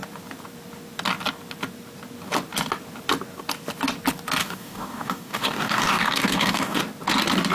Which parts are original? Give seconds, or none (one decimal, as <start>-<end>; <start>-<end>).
0.0-4.4; 6.8-7.5